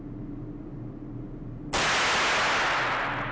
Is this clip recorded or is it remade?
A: recorded